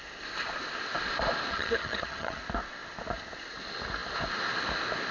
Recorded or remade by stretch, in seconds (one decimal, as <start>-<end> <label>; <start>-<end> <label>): 0.0-1.5 recorded; 1.5-2.4 remade; 2.4-5.1 recorded

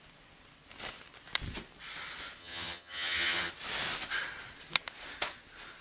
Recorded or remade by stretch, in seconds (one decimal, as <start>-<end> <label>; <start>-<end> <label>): 0.0-2.4 recorded; 2.4-3.5 remade; 3.5-5.8 recorded

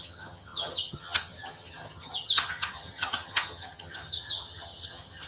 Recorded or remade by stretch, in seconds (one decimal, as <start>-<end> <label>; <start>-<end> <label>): 0.0-5.3 remade

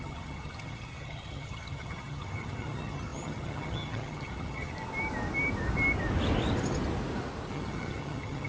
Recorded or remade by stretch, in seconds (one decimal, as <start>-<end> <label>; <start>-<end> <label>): 0.0-4.7 remade; 4.7-7.5 recorded; 7.5-8.5 remade

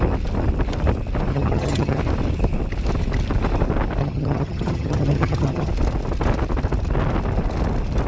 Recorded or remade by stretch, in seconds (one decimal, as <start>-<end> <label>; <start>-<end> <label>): 0.0-1.3 recorded; 1.3-2.0 remade; 2.0-4.0 recorded; 4.0-5.7 remade; 5.7-8.1 recorded

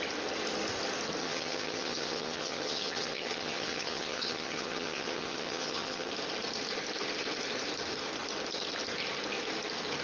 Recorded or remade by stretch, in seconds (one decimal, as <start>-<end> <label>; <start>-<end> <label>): 0.0-1.2 recorded; 1.2-6.1 remade; 6.1-10.0 recorded